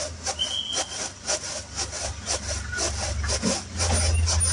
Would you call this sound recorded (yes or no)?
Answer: yes